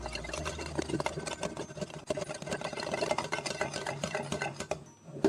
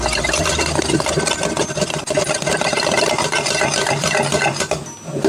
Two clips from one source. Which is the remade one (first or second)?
second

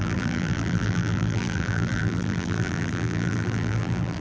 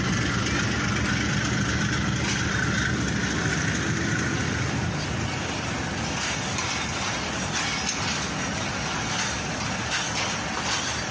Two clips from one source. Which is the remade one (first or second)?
first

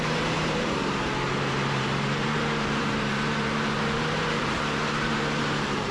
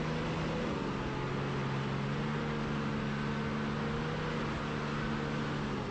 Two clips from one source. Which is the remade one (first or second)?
first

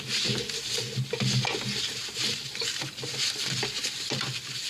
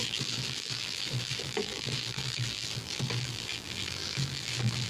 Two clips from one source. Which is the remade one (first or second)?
second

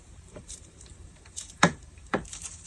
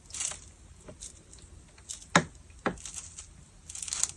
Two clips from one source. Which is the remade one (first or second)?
first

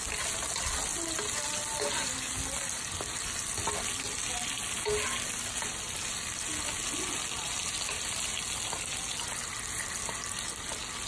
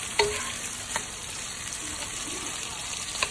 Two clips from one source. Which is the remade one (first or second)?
second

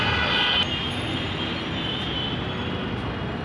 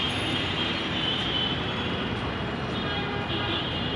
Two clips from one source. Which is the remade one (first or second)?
second